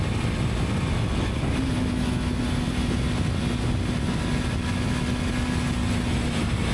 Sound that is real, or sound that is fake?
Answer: real